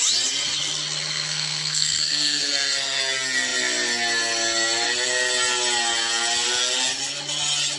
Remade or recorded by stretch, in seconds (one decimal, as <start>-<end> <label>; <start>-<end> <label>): 0.0-1.1 recorded; 1.1-3.0 remade; 3.0-7.8 recorded